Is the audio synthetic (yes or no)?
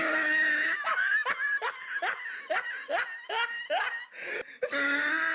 no